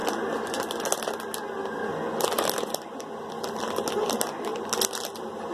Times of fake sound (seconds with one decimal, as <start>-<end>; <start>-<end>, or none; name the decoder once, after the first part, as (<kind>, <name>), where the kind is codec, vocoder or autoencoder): none